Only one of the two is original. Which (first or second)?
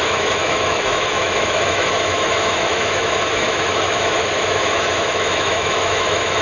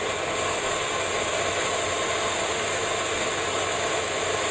second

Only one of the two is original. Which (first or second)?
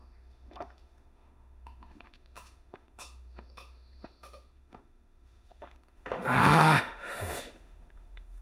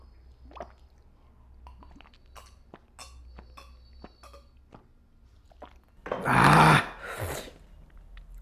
second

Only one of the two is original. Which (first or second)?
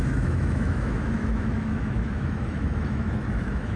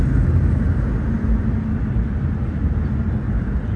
second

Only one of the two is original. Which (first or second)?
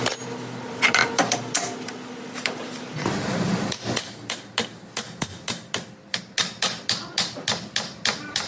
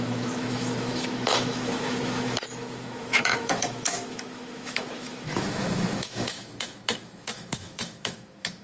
first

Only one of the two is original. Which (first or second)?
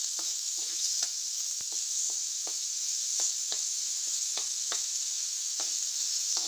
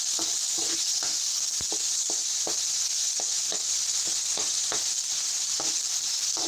second